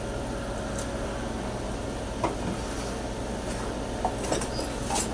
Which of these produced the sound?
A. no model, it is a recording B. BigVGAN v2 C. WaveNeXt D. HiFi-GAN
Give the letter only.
A